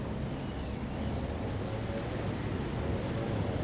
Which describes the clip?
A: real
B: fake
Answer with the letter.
A